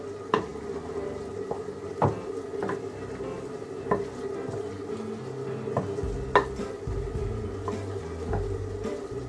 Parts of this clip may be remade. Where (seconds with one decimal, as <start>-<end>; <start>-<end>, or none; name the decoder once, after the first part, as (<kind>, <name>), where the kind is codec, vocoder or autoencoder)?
none